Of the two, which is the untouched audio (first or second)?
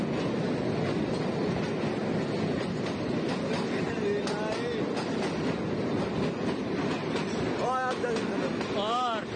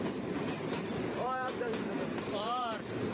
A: first